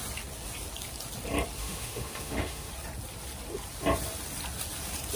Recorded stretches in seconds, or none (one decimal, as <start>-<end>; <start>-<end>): 0.0-1.6; 2.7-5.2